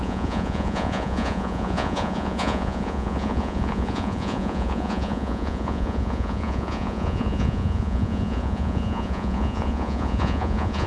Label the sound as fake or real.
fake